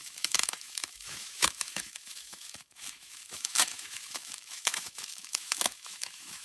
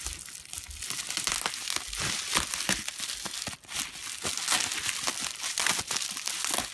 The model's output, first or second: first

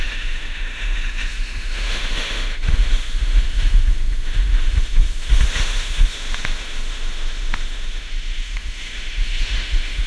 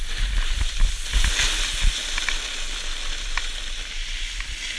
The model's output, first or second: first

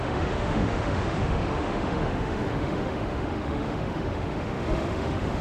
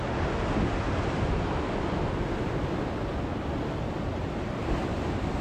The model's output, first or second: first